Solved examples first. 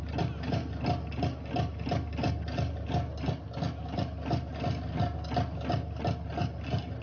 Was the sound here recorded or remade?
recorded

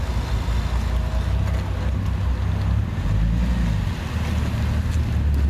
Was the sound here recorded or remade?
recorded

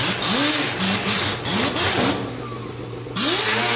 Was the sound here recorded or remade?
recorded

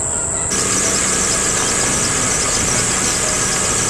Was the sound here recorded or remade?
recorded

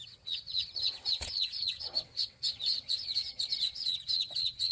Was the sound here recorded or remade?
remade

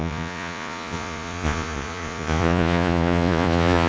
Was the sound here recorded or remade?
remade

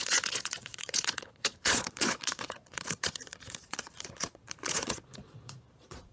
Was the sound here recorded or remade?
remade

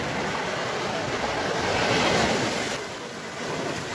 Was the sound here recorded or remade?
recorded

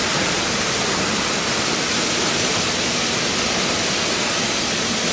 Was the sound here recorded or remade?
remade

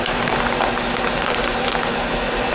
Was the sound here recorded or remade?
recorded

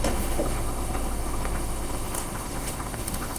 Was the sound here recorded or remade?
remade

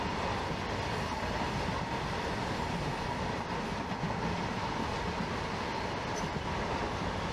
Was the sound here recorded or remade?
recorded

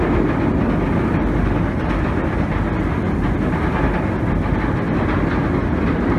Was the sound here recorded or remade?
recorded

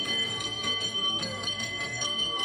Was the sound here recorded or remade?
remade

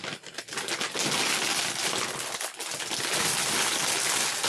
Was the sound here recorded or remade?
recorded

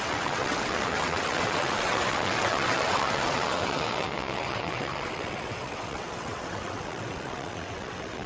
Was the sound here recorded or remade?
remade